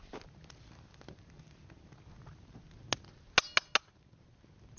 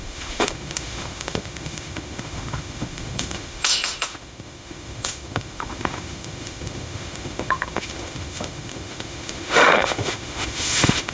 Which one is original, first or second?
first